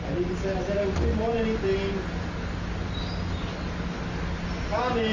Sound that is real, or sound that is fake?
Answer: real